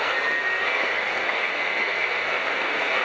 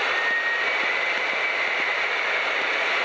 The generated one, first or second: first